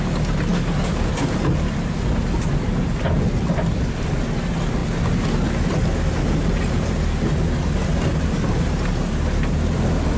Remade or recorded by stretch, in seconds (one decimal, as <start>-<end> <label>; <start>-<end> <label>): 0.0-10.2 recorded